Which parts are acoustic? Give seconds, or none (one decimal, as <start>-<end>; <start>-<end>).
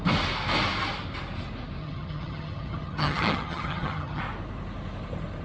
0.0-1.8; 4.2-5.4